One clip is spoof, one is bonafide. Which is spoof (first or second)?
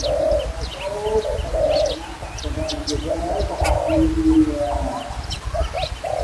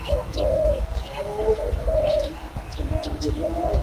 second